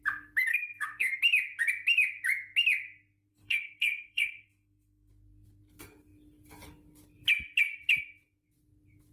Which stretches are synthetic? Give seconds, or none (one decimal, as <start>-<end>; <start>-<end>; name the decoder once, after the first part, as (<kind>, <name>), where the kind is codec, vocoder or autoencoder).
0.5-1.2 (codec, SNAC); 3.3-5.1

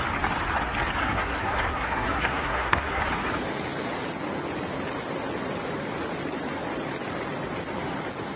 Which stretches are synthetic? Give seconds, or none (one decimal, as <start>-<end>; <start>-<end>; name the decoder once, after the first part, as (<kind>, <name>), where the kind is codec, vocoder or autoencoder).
1.0-3.0 (codec, SNAC)

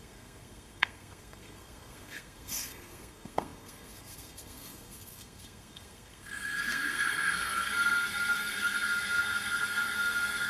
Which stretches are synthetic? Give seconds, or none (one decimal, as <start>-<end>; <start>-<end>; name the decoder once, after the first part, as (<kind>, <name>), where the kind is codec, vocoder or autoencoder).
0.0-10.5 (codec, SNAC)

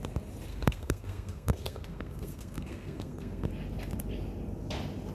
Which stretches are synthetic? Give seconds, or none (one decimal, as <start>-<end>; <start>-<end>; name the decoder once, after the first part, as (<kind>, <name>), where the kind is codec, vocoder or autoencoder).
0.5-3.5 (codec, SNAC)

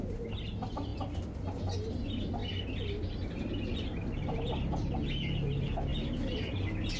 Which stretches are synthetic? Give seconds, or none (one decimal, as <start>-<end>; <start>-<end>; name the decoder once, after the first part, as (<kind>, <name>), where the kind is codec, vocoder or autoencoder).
none